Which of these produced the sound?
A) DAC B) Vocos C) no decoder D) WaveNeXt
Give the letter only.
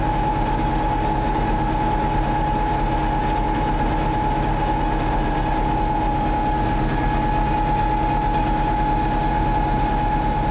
C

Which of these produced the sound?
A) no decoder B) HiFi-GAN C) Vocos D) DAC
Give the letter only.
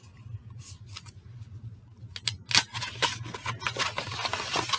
A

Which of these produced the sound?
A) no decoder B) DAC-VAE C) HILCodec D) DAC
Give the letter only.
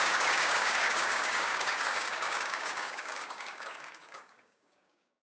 D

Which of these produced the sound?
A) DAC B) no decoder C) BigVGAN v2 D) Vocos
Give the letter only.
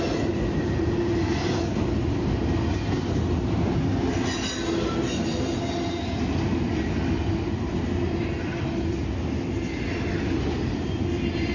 B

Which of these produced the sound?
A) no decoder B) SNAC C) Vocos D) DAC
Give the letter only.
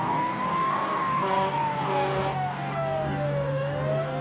D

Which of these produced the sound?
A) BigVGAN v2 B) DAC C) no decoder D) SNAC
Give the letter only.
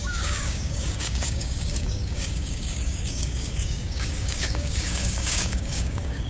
B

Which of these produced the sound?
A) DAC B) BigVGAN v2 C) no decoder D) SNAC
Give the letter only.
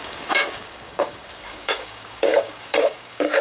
A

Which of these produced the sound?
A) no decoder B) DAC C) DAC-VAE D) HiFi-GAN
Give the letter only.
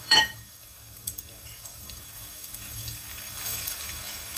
B